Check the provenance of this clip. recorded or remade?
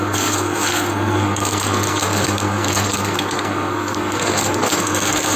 remade